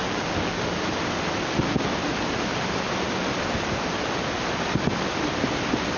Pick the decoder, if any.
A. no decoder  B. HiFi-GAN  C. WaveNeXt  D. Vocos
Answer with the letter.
A